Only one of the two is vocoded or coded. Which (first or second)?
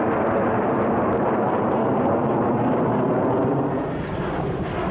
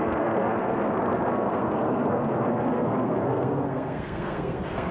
second